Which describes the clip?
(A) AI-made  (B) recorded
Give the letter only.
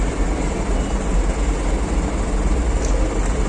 B